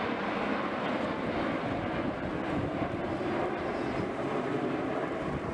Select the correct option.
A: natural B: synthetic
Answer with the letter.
A